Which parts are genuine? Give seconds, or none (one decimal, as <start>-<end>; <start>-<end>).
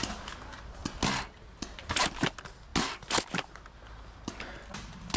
0.0-5.2